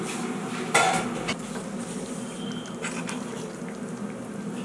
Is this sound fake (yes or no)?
no